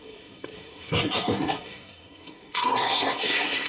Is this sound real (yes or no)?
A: no